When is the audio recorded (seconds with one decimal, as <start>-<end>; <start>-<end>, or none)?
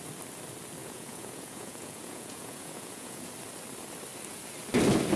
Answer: 0.0-0.8; 3.3-5.2